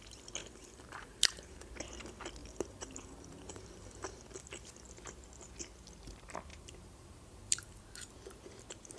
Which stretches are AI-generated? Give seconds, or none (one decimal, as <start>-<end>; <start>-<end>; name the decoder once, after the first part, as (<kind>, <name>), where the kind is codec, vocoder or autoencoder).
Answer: 0.4-1.7 (vocoder, BigVGAN v2); 2.4-4.2; 6.5-7.8